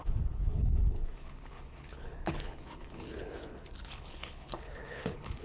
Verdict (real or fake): fake